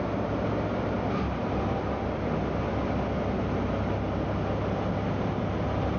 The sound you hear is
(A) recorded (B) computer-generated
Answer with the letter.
A